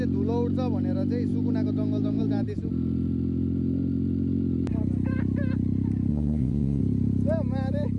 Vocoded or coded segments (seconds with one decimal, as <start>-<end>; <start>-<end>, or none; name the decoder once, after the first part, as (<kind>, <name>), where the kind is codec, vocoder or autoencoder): 6.1-6.8 (vocoder, Vocos)